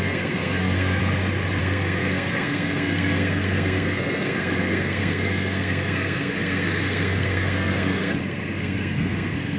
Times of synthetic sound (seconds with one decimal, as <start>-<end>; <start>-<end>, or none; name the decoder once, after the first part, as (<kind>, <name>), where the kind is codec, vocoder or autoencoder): 0.0-1.0 (codec, SNAC); 1.6-9.6